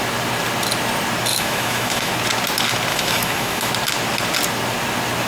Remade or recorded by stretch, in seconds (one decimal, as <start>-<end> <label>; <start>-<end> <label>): 0.0-1.3 recorded; 1.3-2.1 remade; 2.1-2.9 recorded; 2.9-3.7 remade; 3.7-5.3 recorded